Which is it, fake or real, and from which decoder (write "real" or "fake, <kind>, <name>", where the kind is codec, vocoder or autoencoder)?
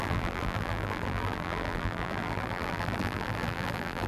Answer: fake, vocoder, BigVGAN v2